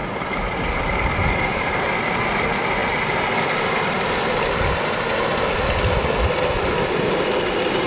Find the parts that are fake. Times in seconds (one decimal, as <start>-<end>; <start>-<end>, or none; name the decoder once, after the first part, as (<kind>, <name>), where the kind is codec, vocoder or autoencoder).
0.0-0.8 (vocoder, BigVGAN v2); 1.5-2.0